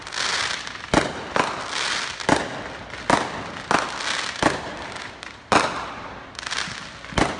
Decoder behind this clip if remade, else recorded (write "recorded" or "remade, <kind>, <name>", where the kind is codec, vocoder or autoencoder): recorded